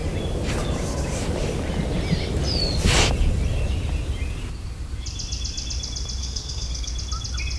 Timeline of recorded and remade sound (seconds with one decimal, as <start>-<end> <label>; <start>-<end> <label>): 0.0-6.2 recorded; 6.2-6.9 remade; 6.9-7.6 recorded